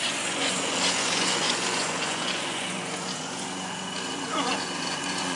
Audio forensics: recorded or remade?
remade